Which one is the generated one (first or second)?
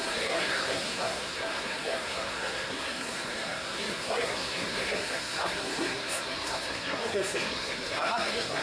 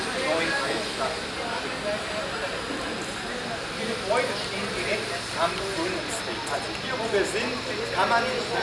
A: first